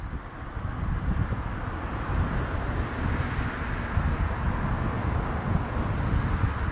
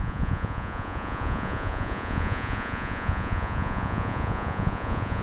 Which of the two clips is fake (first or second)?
second